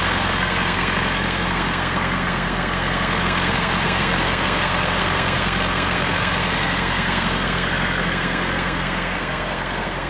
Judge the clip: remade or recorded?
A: remade